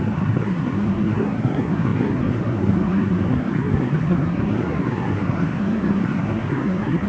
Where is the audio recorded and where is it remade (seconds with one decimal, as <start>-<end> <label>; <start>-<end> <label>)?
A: 0.0-7.1 remade